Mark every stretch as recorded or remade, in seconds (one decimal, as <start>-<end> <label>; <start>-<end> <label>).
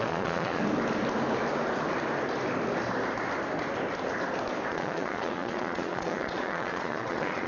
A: 0.0-0.6 remade; 0.6-4.7 recorded; 4.7-7.5 remade